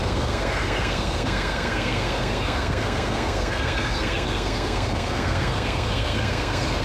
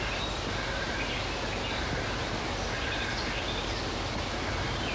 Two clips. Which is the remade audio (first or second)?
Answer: first